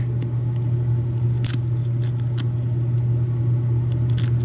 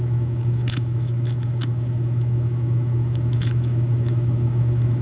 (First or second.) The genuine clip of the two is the first